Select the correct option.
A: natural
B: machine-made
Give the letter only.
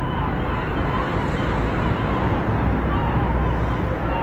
A